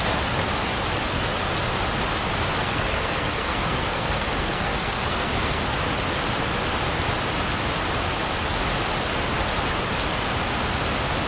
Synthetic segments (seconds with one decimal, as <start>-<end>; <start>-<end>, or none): 2.6-5.6